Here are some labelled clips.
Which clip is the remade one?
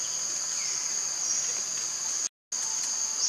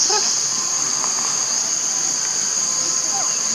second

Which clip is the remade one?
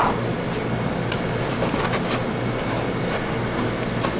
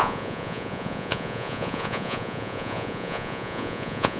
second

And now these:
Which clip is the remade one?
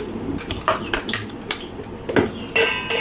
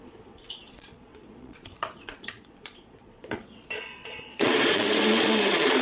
second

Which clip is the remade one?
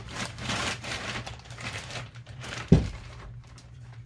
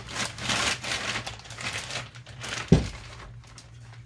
first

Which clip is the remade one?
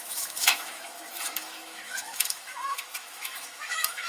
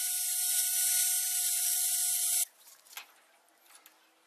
first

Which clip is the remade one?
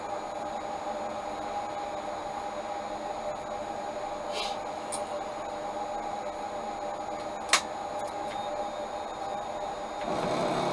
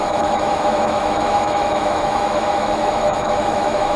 second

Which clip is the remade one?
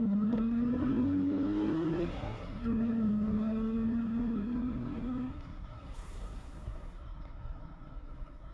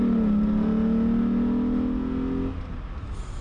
first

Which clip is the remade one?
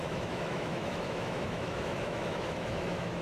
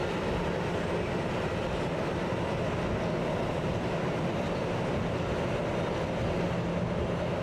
first